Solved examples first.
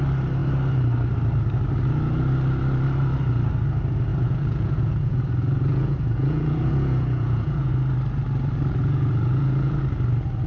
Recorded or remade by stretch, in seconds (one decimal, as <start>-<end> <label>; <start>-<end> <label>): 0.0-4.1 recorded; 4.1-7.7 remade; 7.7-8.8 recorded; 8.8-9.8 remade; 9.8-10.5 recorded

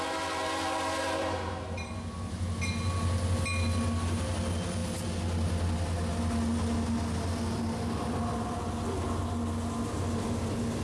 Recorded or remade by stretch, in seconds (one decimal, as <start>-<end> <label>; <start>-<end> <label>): 0.0-10.8 recorded

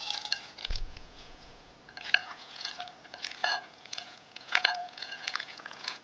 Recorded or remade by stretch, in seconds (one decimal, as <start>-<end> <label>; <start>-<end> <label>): 0.0-0.6 recorded; 0.6-1.7 remade; 1.7-2.2 recorded; 2.2-2.7 remade; 2.7-3.4 recorded; 3.4-6.0 remade

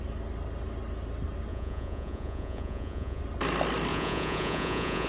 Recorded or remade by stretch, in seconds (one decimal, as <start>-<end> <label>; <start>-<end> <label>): 0.0-1.5 recorded; 1.5-3.2 remade; 3.2-3.9 recorded; 3.9-5.1 remade

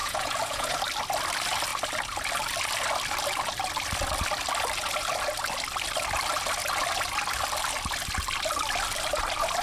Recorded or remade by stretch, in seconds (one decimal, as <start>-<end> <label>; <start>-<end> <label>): 0.0-0.8 remade; 0.8-9.6 recorded

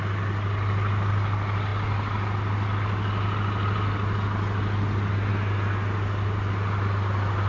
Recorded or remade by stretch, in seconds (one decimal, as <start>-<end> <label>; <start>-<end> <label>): 0.0-7.5 recorded

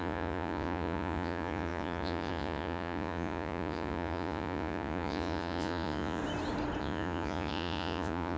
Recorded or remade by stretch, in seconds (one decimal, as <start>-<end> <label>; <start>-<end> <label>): 0.0-6.2 remade; 6.2-6.8 recorded; 6.8-8.4 remade